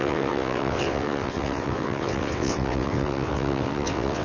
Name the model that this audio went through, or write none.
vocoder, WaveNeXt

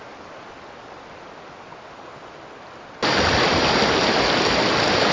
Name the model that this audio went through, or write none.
none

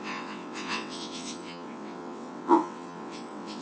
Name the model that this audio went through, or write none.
vocoder, WaveNeXt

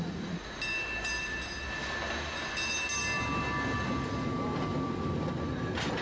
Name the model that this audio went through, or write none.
none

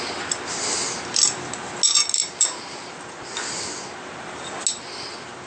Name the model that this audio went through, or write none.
none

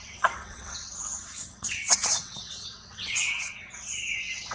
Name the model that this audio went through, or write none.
vocoder, WaveNeXt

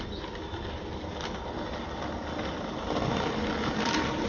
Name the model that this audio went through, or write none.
none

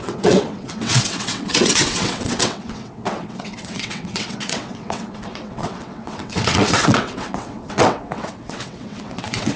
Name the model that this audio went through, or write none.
vocoder, WaveNeXt